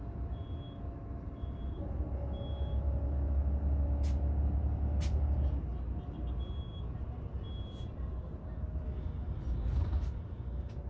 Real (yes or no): yes